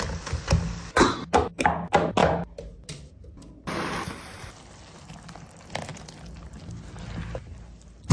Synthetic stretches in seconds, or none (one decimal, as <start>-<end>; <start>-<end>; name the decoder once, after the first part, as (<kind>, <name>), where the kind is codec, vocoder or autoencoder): none